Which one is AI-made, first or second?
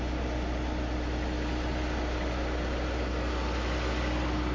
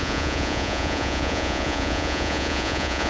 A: second